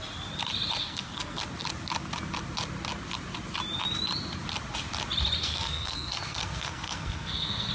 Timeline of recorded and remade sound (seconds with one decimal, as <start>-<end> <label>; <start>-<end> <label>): 0.0-0.8 recorded; 0.8-1.4 remade; 1.4-5.4 recorded; 5.4-7.7 remade